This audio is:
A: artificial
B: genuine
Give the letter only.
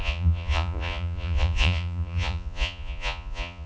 A